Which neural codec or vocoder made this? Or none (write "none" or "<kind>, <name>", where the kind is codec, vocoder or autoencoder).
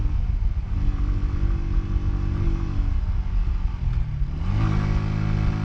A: none